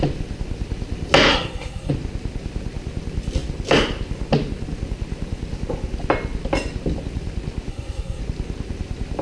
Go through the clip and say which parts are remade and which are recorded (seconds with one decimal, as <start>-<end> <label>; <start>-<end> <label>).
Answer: 0.0-1.3 recorded; 1.3-1.9 remade; 1.9-7.7 recorded; 7.7-8.2 remade; 8.2-9.2 recorded